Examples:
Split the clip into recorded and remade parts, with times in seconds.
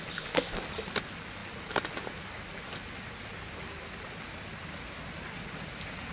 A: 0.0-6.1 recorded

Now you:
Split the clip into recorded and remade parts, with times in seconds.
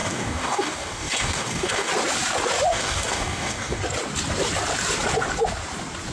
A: 0.0-1.9 remade; 1.9-2.7 recorded; 2.7-3.8 remade; 3.8-6.1 recorded